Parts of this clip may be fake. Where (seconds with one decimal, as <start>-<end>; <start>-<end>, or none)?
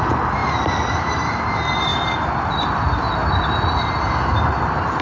none